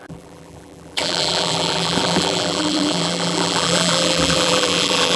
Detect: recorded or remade remade